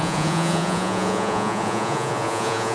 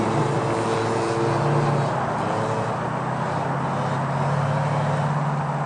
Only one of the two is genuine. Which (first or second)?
second